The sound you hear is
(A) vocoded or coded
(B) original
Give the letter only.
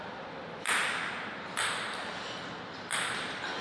B